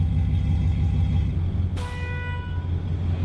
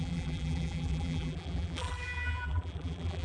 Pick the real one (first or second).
first